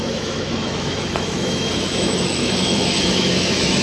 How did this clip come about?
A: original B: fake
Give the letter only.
B